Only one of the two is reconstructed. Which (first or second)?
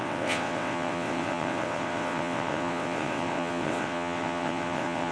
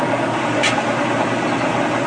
first